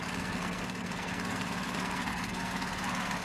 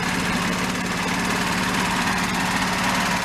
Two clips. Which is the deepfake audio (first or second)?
first